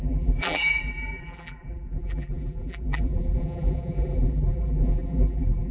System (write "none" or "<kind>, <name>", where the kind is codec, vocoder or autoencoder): vocoder, BigVGAN v2